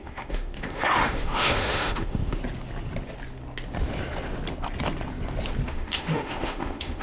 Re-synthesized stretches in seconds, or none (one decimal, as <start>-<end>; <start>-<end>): 0.0-2.4; 5.7-7.0